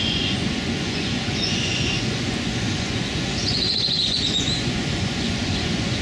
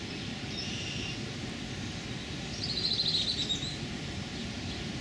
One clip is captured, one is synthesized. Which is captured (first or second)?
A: second